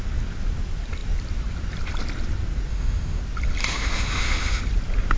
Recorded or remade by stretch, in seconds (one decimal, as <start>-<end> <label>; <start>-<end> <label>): 0.0-2.7 recorded; 2.7-3.2 remade; 3.2-3.6 recorded; 3.6-4.6 remade; 4.6-5.2 recorded